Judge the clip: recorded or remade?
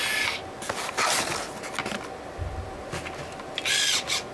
recorded